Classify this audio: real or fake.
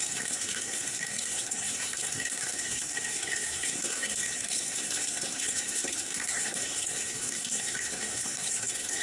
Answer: fake